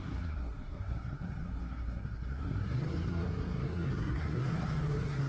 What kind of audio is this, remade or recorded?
remade